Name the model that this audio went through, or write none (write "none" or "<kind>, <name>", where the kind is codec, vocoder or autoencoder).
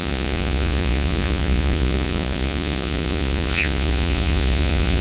vocoder, Vocos